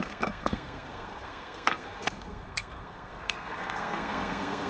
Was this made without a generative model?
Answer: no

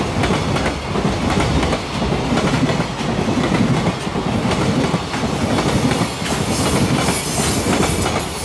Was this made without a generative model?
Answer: yes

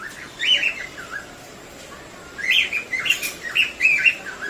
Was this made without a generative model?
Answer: yes